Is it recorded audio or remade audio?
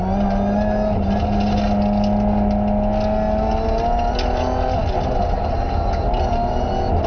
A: recorded